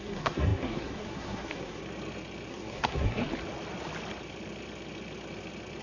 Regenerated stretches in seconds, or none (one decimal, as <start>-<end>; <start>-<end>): 0.0-1.8; 2.5-3.2